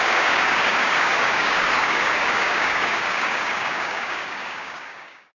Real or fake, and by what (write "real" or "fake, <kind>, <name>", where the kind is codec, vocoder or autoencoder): fake, codec, DAC